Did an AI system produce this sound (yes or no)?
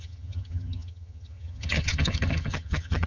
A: yes